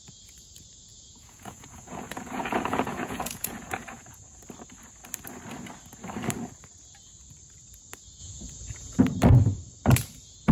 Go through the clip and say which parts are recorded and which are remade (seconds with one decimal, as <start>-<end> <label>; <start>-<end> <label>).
0.0-0.9 recorded; 0.9-4.4 remade; 4.4-8.2 recorded; 8.2-9.0 remade; 9.0-10.5 recorded